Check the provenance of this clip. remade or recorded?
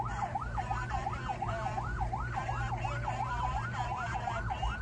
remade